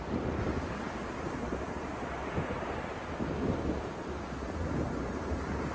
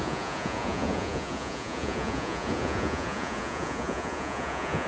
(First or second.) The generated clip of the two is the second